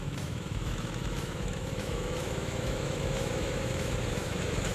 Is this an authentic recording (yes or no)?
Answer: no